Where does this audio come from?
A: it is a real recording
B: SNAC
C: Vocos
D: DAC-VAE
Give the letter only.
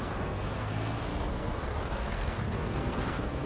B